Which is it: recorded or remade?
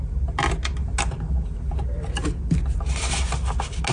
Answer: recorded